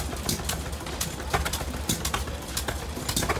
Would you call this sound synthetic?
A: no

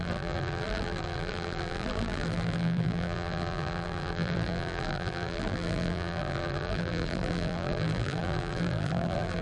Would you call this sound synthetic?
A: yes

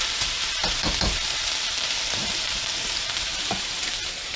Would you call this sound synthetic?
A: yes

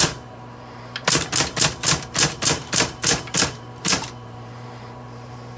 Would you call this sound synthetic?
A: yes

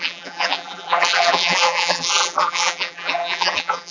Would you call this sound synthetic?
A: yes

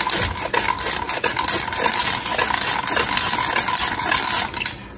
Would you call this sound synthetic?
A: no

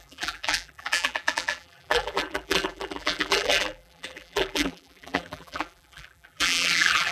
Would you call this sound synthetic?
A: yes